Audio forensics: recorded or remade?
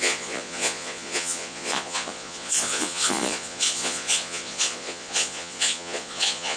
remade